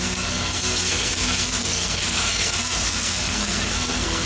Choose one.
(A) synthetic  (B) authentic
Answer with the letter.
A